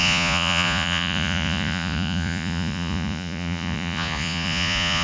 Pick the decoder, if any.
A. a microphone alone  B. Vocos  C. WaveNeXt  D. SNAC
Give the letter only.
B